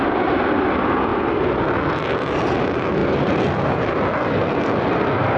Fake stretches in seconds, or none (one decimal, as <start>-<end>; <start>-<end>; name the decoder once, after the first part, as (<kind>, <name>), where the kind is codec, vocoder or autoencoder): none